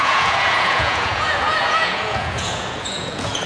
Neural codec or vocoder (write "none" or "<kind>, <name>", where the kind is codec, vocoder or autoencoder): vocoder, Vocos